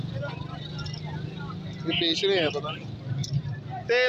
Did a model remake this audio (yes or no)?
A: no